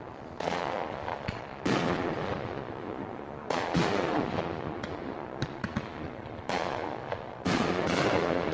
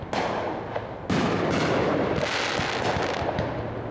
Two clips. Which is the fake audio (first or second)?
first